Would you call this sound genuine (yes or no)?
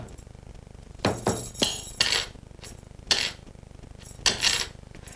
yes